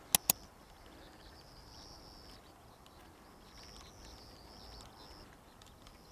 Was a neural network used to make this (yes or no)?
no